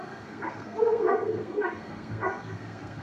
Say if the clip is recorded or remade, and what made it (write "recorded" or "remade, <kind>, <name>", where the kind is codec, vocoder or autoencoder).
remade, codec, SNAC